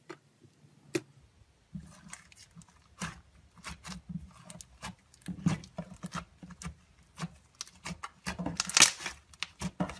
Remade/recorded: recorded